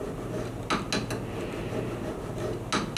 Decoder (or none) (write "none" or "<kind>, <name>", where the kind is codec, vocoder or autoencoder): none